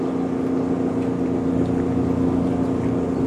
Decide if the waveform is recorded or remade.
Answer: recorded